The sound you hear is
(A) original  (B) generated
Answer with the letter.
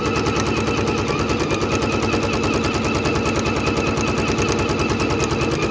A